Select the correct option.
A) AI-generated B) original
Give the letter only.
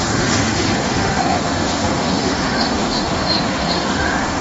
A